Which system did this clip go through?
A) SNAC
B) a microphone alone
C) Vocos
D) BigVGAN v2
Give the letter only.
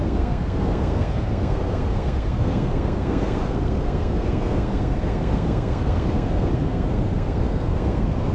A